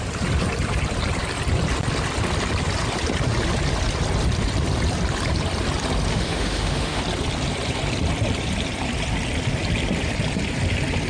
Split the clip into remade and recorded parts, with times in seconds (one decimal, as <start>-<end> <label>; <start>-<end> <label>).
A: 0.0-6.1 recorded; 6.1-7.0 remade; 7.0-11.1 recorded